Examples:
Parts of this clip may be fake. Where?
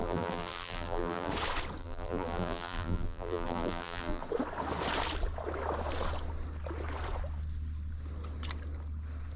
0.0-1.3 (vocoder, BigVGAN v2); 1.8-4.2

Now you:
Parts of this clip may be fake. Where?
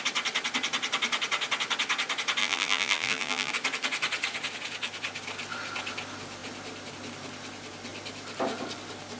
2.4-3.5 (vocoder, BigVGAN v2)